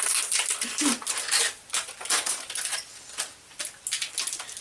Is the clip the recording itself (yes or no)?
yes